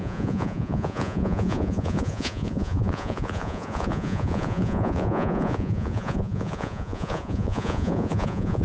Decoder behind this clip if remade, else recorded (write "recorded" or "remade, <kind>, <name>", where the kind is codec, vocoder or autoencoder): remade, vocoder, Vocos